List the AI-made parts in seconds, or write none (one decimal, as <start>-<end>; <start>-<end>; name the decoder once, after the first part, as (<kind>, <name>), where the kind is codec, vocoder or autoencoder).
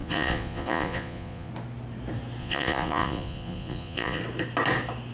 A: 0.0-1.5 (vocoder, Vocos); 2.4-4.2